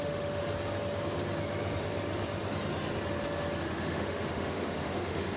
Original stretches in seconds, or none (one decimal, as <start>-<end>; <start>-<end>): 0.4-3.6